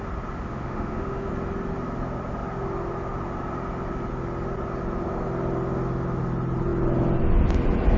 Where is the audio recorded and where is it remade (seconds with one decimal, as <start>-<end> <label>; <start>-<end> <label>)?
0.0-0.5 recorded; 0.5-1.3 remade; 1.3-8.0 recorded